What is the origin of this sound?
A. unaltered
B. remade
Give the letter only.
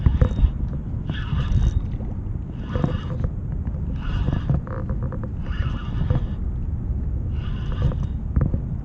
A